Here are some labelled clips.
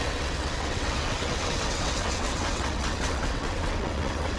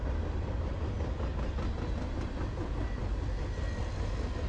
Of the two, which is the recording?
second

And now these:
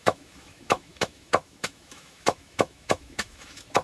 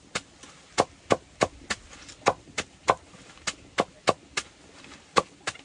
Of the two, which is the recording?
second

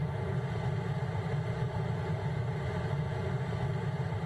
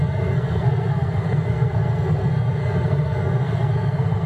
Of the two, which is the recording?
first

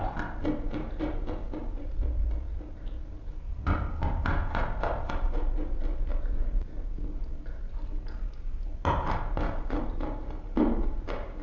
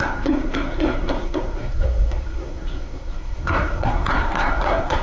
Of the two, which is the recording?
first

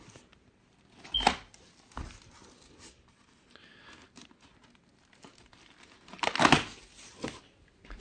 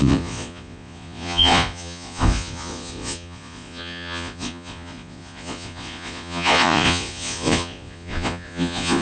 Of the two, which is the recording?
first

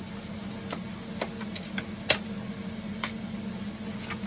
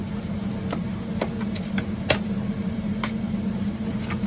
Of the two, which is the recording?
first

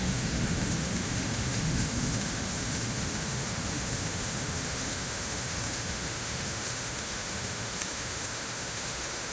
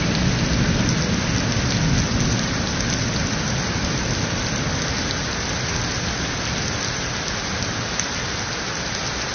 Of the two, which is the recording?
second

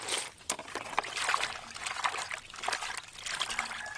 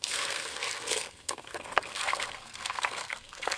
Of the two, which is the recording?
first